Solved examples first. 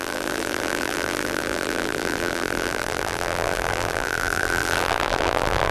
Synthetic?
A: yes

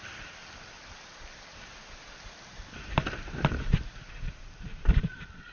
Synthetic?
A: yes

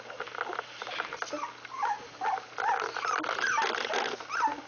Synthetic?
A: no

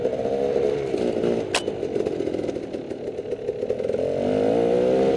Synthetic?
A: no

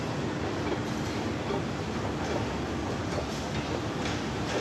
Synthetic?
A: no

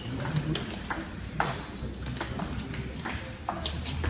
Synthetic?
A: no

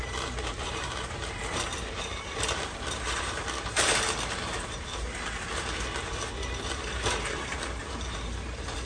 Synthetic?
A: yes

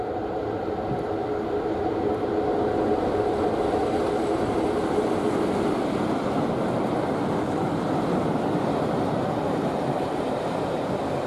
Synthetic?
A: no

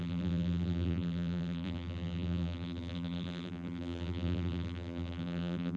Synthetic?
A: yes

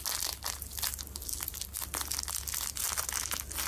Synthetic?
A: no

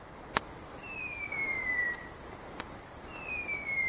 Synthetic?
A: no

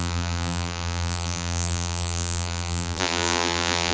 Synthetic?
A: yes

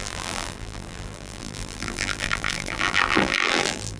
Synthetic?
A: yes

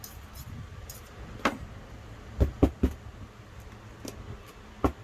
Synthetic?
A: no